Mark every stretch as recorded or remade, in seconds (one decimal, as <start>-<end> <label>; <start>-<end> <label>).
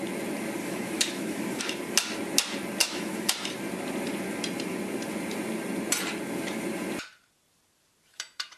0.0-0.6 recorded; 0.6-1.6 remade; 1.6-2.8 recorded; 2.8-3.3 remade; 3.3-8.6 recorded